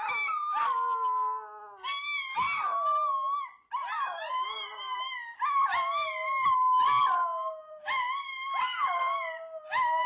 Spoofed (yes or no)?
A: no